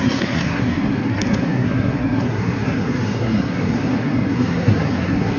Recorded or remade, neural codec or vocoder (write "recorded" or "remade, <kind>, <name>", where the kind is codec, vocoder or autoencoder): remade, codec, SNAC